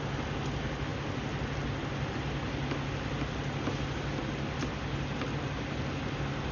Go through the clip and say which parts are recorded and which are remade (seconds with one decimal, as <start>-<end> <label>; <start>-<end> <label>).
0.0-6.5 recorded